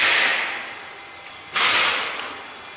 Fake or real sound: real